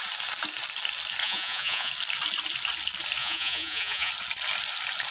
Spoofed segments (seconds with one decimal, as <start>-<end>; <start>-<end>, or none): 1.2-1.9; 3.2-4.1